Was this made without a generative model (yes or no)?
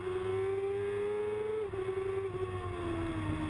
yes